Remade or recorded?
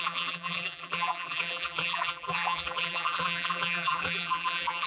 remade